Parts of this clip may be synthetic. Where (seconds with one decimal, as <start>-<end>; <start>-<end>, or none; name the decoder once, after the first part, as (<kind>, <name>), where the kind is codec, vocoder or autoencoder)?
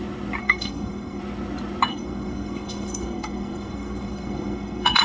0.4-1.2 (codec, SNAC); 1.9-5.0